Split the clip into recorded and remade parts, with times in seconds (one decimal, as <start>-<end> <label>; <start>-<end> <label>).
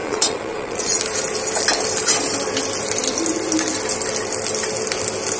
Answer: 0.0-1.0 remade; 1.0-5.4 recorded